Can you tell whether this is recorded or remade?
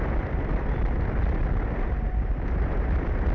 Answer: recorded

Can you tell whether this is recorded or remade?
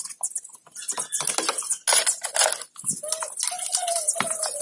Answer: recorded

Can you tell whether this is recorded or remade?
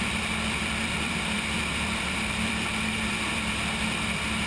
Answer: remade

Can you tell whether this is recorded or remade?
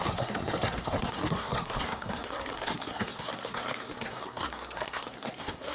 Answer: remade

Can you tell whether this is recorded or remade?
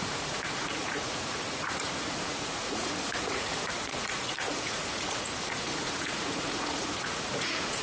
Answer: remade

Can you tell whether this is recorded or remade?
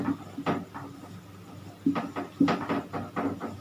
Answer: recorded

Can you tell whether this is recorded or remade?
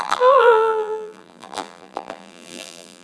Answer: remade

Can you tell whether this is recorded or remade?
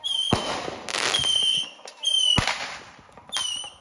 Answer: recorded